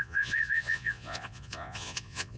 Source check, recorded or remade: remade